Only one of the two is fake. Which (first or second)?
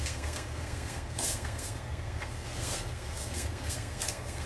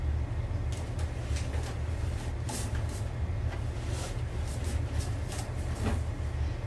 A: first